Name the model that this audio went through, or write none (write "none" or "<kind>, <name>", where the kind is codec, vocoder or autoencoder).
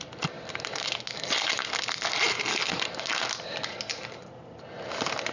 none